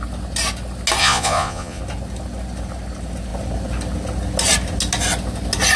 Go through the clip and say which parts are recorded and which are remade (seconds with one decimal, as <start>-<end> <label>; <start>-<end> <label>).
0.0-1.0 recorded; 1.0-1.8 remade; 1.8-5.8 recorded